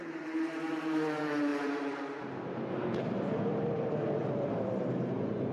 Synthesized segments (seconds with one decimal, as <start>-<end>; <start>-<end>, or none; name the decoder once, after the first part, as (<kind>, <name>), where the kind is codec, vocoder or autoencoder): 0.0-5.5 (vocoder, BigVGAN v2)